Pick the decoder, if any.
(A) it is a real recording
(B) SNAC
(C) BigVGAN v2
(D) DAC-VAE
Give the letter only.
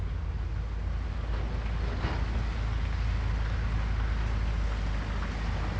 A